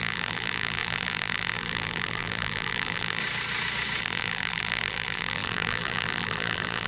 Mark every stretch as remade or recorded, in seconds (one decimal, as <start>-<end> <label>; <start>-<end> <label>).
0.0-3.2 remade; 3.2-4.0 recorded; 4.0-6.9 remade